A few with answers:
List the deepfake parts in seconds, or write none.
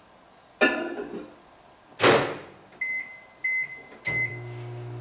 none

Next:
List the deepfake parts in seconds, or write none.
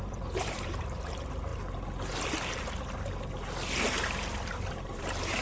0.0-1.5 (vocoder, BigVGAN v2); 4.7-5.4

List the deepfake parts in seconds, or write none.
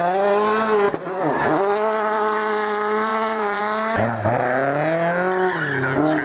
3.1-3.6 (vocoder, Vocos)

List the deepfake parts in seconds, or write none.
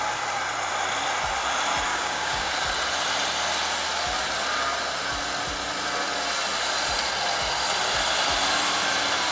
1.9-2.5 (codec, DAC)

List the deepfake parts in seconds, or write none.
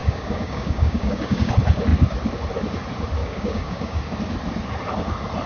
0.0-1.5 (codec, DAC); 3.2-4.0